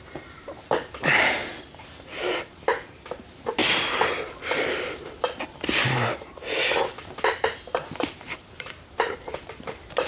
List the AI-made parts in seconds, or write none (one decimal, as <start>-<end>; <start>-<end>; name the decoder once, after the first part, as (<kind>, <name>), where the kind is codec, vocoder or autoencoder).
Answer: 0.0-1.5 (vocoder, BigVGAN v2); 2.3-3.6; 5.8-10.1